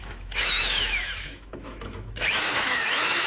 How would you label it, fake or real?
fake